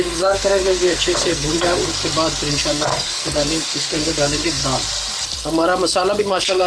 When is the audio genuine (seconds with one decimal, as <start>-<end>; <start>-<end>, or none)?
1.8-2.5; 4.6-6.2